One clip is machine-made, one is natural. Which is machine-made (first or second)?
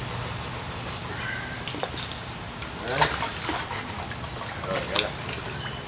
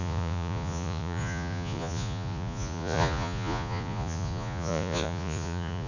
second